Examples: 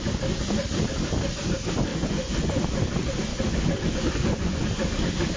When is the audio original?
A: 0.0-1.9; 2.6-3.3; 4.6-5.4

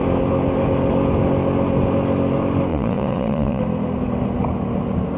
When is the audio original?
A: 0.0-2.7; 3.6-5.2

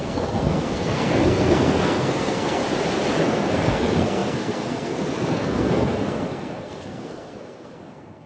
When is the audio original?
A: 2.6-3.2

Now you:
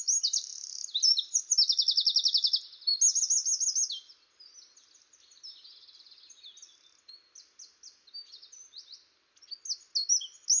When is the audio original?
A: 0.0-0.5; 1.4-10.6

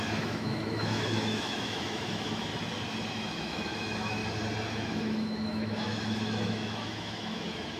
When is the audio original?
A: 2.5-3.1; 4.2-4.7

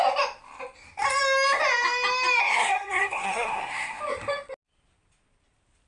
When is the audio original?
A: 0.0-2.4; 4.0-5.9